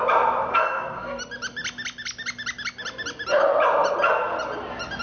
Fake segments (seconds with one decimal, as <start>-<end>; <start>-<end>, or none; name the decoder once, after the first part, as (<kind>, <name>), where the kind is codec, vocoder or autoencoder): 0.5-1.2 (codec, SNAC)